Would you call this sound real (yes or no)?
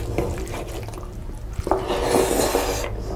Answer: yes